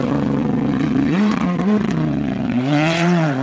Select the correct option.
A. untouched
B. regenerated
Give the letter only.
B